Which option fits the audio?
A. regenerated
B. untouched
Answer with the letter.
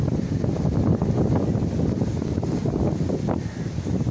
B